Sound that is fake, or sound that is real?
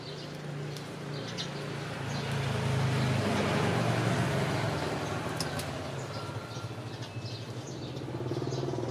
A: real